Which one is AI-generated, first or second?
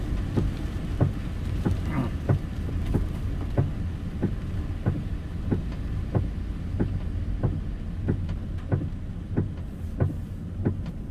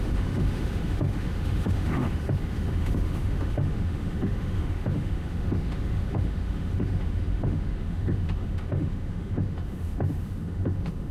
second